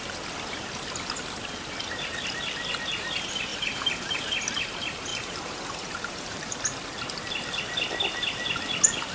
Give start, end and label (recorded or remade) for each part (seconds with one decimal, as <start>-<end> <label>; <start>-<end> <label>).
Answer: 0.0-3.5 recorded; 3.5-4.2 remade; 4.2-5.1 recorded; 5.1-6.6 remade; 6.6-9.1 recorded